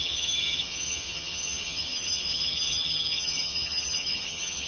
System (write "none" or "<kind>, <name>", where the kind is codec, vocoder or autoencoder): vocoder, HiFi-GAN